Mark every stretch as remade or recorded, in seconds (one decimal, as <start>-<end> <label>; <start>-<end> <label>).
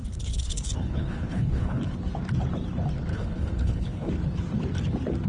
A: 0.0-1.9 remade; 1.9-3.1 recorded; 3.1-4.1 remade; 4.1-5.3 recorded